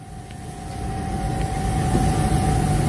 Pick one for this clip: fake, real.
real